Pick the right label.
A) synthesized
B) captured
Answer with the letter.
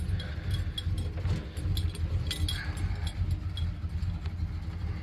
B